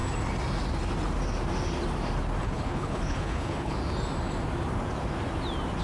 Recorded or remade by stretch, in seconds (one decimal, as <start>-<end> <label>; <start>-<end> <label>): 0.0-2.4 recorded; 2.4-3.8 remade; 3.8-5.8 recorded